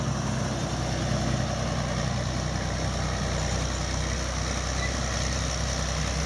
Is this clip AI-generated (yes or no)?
no